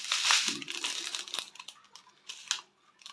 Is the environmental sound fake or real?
real